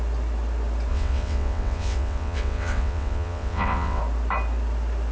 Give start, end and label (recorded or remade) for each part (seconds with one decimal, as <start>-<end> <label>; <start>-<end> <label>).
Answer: 0.0-0.9 recorded; 0.9-4.0 remade; 4.0-5.1 recorded